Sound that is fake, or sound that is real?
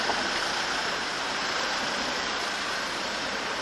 fake